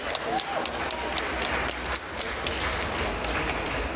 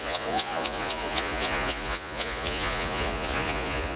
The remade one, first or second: second